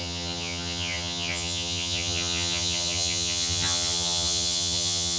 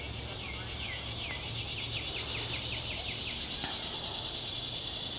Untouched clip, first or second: second